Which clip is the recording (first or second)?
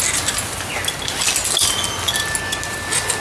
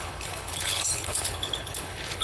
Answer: first